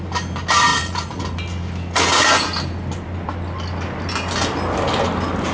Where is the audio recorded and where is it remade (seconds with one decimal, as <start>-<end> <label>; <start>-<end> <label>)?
0.0-0.7 recorded; 0.7-1.2 remade; 1.2-5.5 recorded